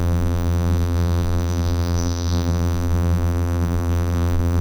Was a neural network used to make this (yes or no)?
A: yes